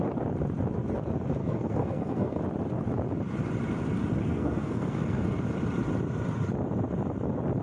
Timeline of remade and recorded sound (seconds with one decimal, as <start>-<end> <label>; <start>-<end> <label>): 0.0-1.4 recorded; 1.4-2.4 remade; 2.4-4.2 recorded; 4.2-5.4 remade; 5.4-7.6 recorded